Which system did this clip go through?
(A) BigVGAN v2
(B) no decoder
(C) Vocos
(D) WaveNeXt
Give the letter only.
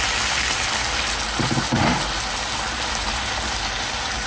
B